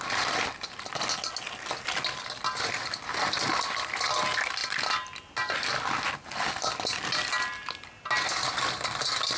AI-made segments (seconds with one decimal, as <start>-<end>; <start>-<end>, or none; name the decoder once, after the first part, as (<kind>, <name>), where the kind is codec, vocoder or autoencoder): none